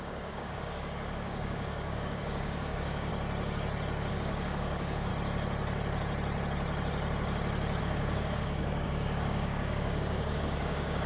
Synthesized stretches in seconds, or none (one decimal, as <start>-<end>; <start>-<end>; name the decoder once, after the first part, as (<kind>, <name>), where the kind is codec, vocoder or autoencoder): 0.0-3.1 (codec, DAC); 4.1-5.1; 7.8-11.1